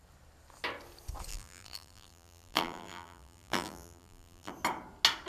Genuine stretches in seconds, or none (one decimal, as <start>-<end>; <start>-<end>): 0.0-1.3; 4.5-5.3